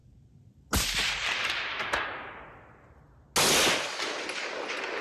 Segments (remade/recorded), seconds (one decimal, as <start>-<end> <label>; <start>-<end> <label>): 0.0-3.0 remade; 3.0-5.0 recorded

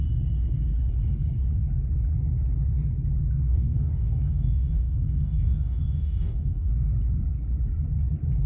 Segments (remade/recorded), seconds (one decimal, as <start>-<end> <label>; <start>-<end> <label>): 0.0-3.5 recorded; 3.5-6.7 remade; 6.7-8.5 recorded

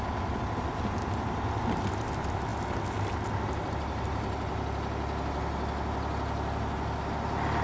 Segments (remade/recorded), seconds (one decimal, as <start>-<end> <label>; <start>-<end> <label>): 0.0-7.6 recorded

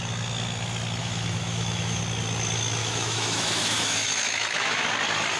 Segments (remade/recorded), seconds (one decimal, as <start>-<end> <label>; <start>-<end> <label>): 0.0-1.0 recorded; 1.0-2.0 remade; 2.0-2.8 recorded; 2.8-4.9 remade; 4.9-5.4 recorded